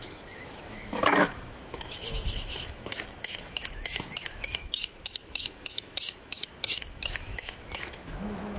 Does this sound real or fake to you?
fake